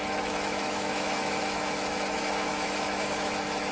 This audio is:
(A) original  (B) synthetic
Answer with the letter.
B